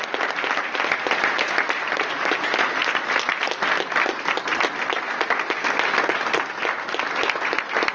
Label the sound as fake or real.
real